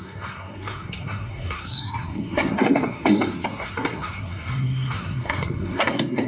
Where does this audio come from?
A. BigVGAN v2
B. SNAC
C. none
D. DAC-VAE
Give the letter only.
B